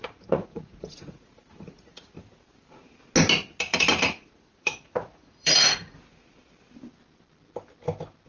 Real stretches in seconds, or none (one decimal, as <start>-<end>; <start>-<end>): 2.1-3.7; 6.0-8.3